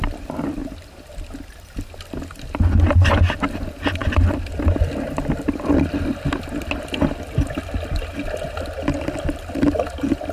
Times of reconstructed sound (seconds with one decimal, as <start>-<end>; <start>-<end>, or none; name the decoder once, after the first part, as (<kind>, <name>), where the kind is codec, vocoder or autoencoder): 0.6-1.9 (vocoder, BigVGAN v2)